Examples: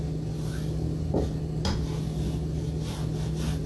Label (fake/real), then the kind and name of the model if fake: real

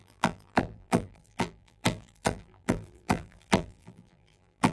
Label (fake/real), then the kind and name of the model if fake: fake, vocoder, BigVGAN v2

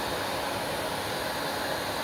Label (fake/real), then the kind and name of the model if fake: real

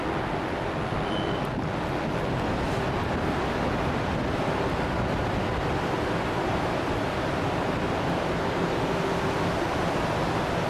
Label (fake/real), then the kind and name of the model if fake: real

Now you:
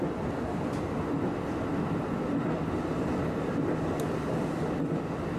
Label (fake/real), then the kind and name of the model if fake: real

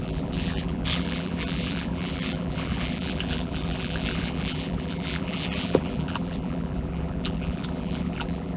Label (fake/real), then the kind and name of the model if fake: fake, vocoder, BigVGAN v2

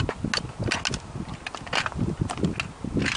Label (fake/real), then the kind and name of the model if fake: real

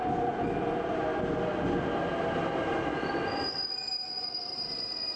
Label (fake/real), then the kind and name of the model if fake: real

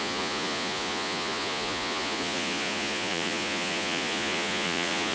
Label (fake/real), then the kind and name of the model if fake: fake, vocoder, Vocos